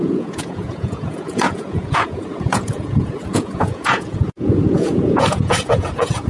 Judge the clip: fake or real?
fake